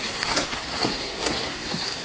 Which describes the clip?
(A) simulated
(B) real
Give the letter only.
A